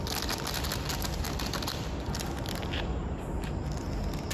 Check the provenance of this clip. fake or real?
real